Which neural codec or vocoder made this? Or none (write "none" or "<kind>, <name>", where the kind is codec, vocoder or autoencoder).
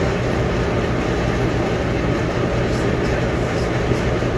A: vocoder, BigVGAN v2